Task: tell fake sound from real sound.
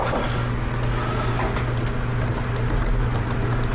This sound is real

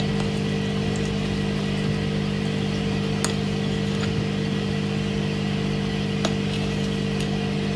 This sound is real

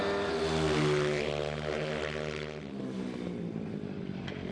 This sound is real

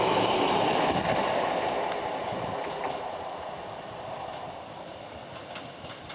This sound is real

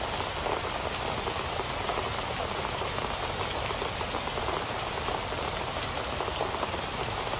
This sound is real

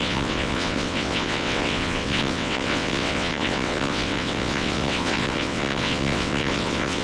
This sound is fake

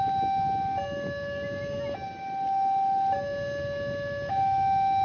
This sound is real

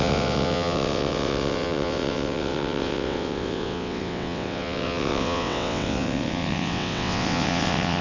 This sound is fake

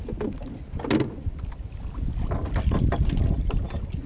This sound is real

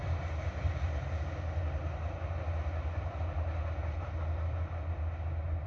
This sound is real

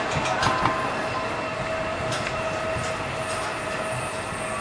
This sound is real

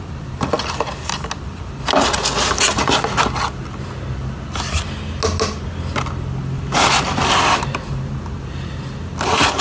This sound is real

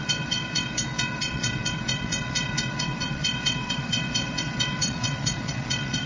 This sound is fake